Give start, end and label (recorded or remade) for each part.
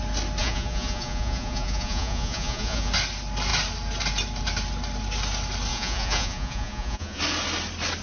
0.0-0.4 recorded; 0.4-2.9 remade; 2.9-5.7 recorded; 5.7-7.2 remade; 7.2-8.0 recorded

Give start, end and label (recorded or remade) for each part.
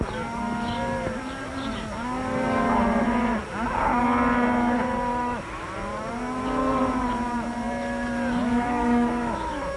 0.0-5.1 recorded; 5.1-5.9 remade; 5.9-8.4 recorded; 8.4-9.8 remade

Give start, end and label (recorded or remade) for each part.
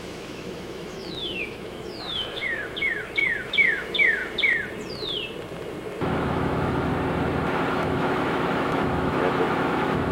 0.0-4.2 remade; 4.2-6.0 recorded; 6.0-6.9 remade; 6.9-7.7 recorded; 7.7-10.1 remade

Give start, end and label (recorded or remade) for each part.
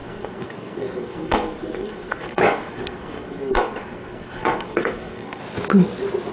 0.0-5.4 remade; 5.4-6.3 recorded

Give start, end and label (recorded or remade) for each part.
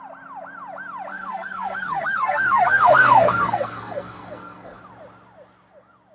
0.0-1.1 recorded; 1.1-4.8 remade; 4.8-6.1 recorded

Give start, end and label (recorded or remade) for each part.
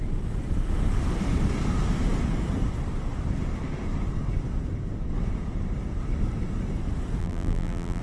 0.0-7.2 recorded; 7.2-8.0 remade